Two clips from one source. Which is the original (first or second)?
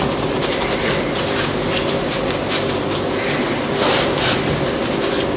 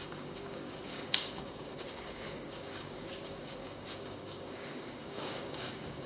first